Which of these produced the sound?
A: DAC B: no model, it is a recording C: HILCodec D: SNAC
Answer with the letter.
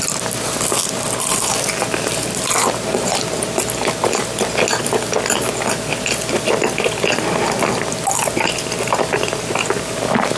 B